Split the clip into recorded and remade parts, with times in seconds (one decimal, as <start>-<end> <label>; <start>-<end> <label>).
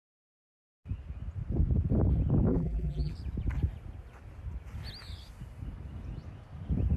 0.0-2.5 recorded; 2.5-3.1 remade; 3.1-7.0 recorded